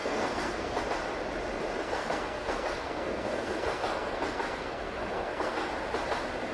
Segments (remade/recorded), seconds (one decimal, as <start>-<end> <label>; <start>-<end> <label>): 0.0-0.8 remade; 0.8-1.8 recorded; 1.8-5.7 remade; 5.7-6.5 recorded